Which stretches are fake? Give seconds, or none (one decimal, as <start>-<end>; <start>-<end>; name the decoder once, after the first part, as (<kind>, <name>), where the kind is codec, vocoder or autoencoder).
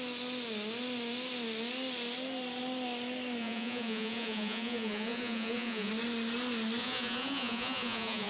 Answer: 3.4-5.9 (vocoder, Vocos); 6.8-8.3